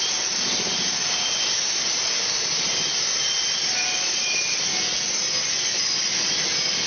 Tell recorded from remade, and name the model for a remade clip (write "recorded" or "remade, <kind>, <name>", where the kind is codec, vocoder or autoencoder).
recorded